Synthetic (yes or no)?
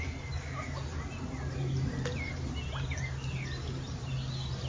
no